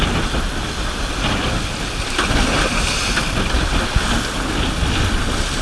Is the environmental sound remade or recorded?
recorded